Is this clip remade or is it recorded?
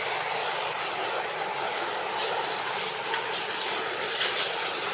recorded